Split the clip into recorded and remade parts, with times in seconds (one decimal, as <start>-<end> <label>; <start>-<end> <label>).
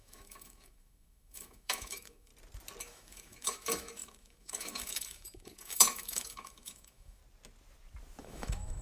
0.0-2.3 remade; 2.3-2.8 recorded; 2.8-7.2 remade; 7.2-8.2 recorded; 8.2-8.8 remade